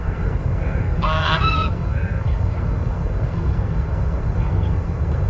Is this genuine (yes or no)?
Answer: no